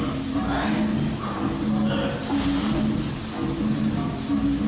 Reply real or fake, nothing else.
real